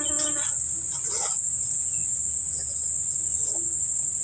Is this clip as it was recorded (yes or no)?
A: yes